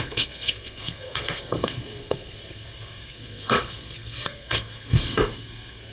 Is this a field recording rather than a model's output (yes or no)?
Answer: no